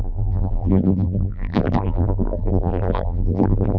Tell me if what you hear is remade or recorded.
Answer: remade